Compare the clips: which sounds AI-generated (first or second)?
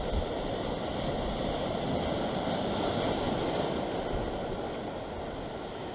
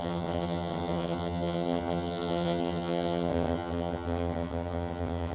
second